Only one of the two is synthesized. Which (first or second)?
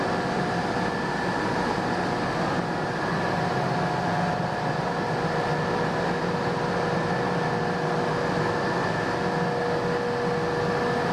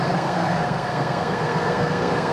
second